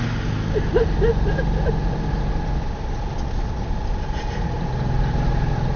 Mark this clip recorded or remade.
recorded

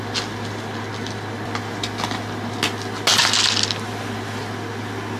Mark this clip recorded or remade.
recorded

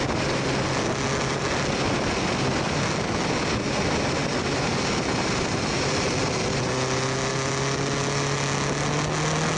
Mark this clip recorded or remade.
recorded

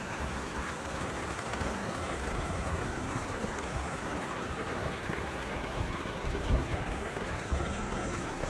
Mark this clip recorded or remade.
remade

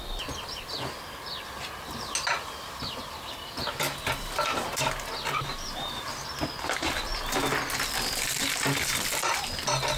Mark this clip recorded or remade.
recorded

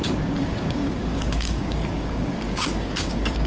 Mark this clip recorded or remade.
remade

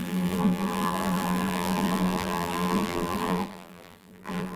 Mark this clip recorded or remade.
remade